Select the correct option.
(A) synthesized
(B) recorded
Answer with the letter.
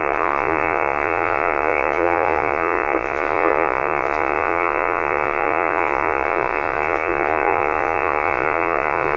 A